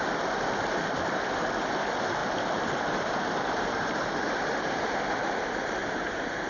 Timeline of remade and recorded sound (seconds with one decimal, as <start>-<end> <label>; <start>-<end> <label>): 0.0-2.2 recorded; 2.2-4.3 remade; 4.3-5.8 recorded; 5.8-6.5 remade